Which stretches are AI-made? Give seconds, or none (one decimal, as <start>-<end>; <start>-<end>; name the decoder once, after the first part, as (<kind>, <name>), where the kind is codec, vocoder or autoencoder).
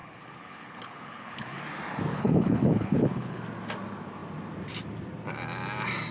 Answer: 0.0-1.6 (codec, HILCodec); 2.1-3.4